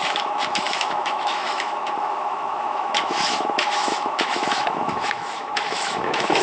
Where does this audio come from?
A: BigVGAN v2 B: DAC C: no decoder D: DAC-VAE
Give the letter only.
D